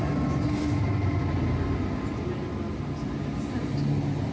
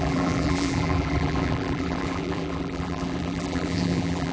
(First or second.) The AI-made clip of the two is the second